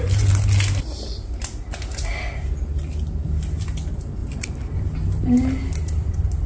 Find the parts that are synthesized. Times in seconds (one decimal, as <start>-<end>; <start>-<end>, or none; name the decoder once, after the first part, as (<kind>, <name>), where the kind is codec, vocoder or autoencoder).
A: none